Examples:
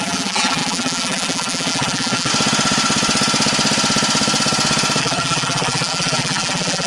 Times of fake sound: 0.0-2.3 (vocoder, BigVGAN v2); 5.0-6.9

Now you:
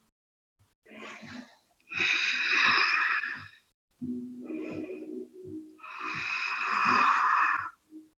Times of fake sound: 3.4-4.5 (vocoder, BigVGAN v2); 4.9-6.2